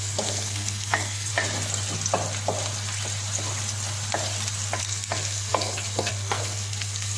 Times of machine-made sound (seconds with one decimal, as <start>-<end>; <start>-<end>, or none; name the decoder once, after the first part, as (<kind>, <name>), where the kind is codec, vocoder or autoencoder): 0.0-1.3 (codec, SNAC); 4.8-7.2